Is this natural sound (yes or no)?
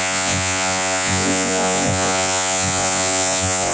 no